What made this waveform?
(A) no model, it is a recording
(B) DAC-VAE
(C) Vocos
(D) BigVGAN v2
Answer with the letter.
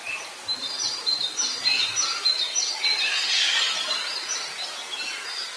D